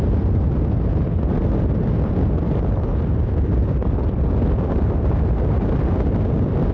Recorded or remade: recorded